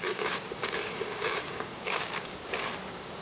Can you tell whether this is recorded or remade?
remade